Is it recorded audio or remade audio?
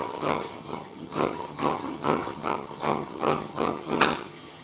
remade